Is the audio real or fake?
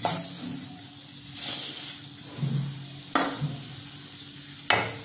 real